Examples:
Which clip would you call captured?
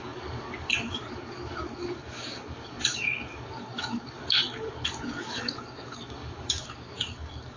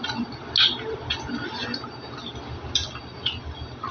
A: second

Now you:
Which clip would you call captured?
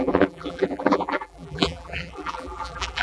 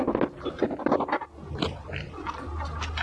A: second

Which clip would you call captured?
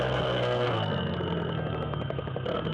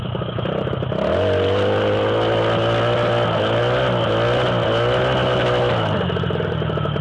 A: second